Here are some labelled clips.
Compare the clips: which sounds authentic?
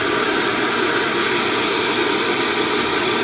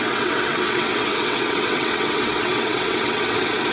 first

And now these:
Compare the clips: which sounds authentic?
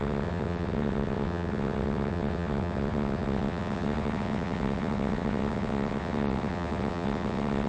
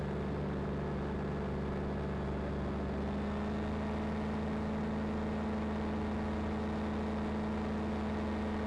second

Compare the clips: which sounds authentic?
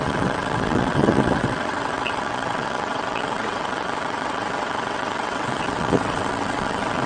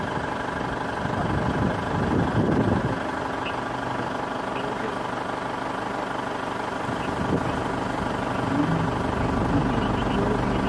second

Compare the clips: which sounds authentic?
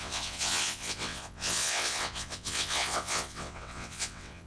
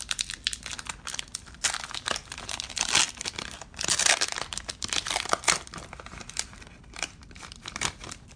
second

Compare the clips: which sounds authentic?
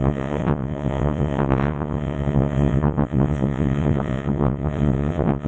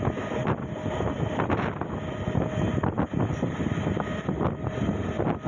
second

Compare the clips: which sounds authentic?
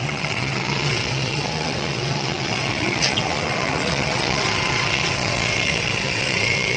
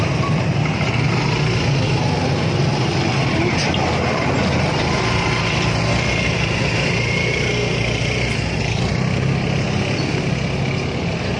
second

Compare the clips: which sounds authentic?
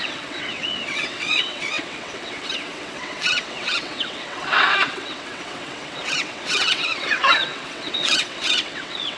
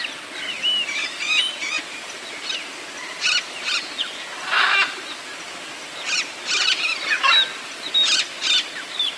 second